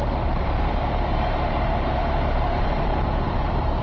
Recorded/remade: remade